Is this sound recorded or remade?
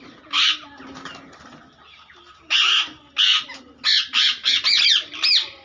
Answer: recorded